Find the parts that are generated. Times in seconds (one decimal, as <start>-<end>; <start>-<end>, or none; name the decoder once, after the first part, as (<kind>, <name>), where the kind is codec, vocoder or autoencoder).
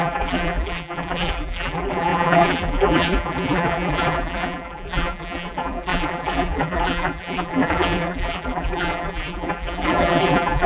0.0-10.7 (vocoder, BigVGAN v2)